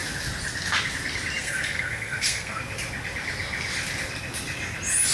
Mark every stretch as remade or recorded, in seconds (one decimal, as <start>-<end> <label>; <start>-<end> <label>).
0.0-1.4 recorded; 1.4-2.6 remade; 2.6-5.1 recorded